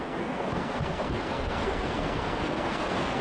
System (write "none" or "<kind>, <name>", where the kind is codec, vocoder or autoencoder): codec, SNAC